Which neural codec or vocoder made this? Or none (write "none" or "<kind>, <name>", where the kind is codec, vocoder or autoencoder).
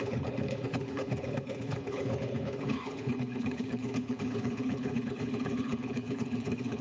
codec, HILCodec